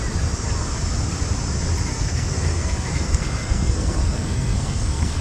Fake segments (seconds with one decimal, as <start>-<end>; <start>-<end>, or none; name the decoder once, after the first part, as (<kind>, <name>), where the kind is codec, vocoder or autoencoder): 1.9-5.2 (codec, SNAC)